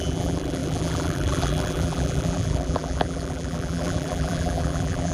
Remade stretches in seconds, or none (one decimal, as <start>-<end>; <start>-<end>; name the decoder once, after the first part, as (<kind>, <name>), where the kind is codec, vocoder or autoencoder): 0.0-5.1 (vocoder, BigVGAN v2)